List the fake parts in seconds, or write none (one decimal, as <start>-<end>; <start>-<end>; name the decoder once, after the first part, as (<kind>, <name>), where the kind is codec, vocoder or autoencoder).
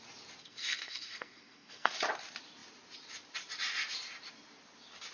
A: 0.4-1.9 (codec, SNAC)